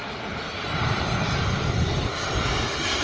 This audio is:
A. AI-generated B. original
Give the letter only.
B